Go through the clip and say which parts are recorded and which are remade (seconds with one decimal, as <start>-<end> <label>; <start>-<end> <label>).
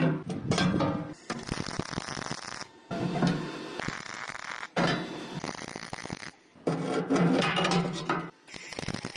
0.0-9.2 recorded